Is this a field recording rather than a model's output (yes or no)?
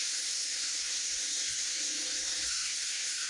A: no